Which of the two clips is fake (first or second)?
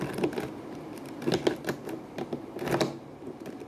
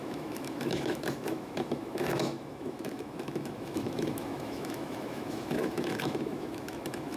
second